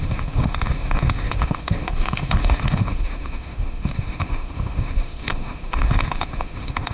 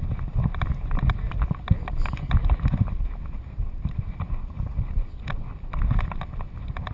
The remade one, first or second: first